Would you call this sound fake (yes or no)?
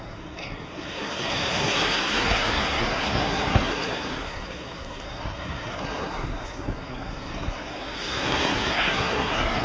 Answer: yes